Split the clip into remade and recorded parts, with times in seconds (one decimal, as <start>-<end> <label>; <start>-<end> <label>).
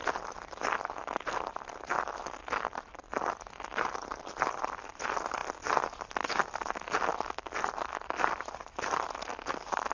0.0-9.9 recorded